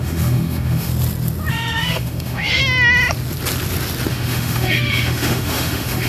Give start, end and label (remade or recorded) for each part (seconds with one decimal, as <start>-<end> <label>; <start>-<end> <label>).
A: 0.0-0.9 remade; 0.9-1.5 recorded; 1.5-2.6 remade; 2.6-4.1 recorded; 4.1-6.1 remade